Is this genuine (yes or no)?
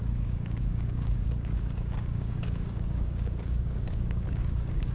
no